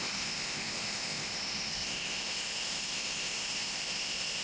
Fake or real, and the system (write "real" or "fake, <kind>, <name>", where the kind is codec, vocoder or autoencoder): fake, codec, ZipCodec